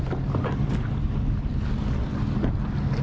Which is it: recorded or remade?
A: recorded